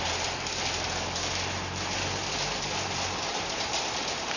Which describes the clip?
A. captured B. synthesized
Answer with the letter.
A